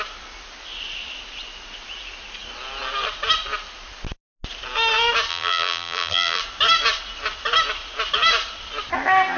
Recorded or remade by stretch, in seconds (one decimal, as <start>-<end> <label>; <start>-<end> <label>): 0.0-5.3 recorded; 5.3-6.4 remade; 6.4-9.4 recorded